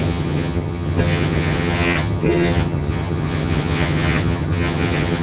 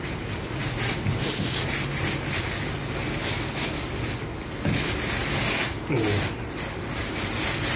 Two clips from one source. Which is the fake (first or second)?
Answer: first